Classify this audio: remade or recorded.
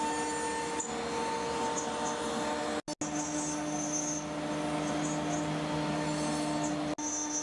recorded